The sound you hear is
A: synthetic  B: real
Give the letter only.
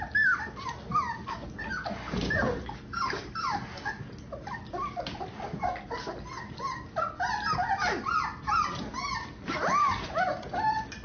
B